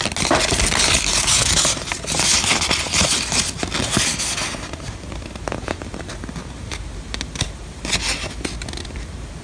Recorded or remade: recorded